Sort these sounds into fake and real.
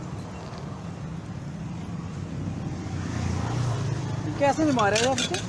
real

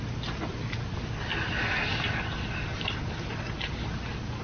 real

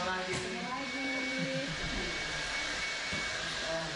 fake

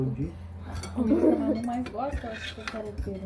real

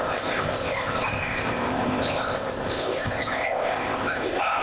fake